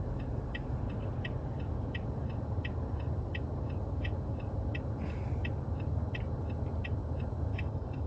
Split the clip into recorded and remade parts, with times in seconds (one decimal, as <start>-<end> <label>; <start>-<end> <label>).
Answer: 0.0-7.5 recorded; 7.5-8.1 remade